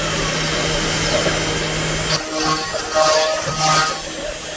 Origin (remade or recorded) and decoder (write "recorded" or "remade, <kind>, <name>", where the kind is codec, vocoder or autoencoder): recorded